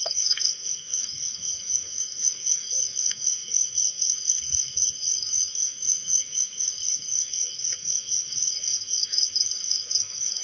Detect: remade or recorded remade